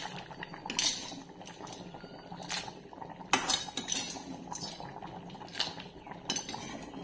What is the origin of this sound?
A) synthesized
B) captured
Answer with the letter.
B